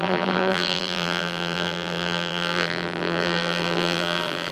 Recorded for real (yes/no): no